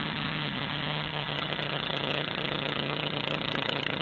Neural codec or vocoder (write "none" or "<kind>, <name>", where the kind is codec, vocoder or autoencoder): vocoder, HiFi-GAN